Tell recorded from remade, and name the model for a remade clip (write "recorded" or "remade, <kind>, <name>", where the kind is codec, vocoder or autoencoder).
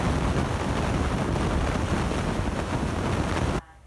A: recorded